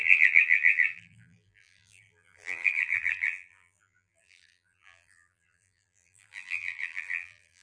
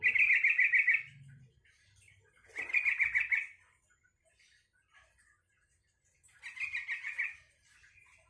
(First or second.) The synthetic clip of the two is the first